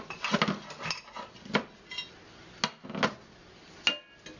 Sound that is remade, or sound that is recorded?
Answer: recorded